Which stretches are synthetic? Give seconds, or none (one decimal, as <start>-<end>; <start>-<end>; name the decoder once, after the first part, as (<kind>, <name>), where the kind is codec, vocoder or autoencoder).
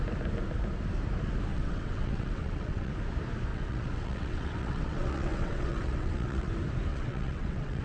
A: 1.5-2.9 (vocoder, WaveNeXt); 3.5-6.5; 6.9-7.8